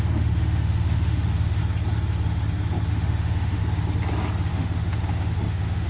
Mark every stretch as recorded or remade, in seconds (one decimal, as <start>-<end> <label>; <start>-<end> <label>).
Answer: 0.0-1.6 remade; 1.6-2.9 recorded; 2.9-3.6 remade; 3.6-4.5 recorded; 4.5-5.9 remade